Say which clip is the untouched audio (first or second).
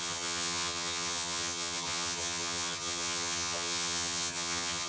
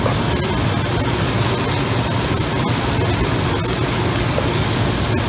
second